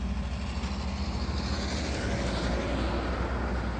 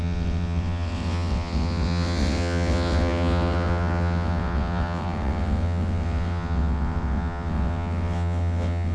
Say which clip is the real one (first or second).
first